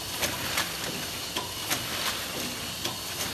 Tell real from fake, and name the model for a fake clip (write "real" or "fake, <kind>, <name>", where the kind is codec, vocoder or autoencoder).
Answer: real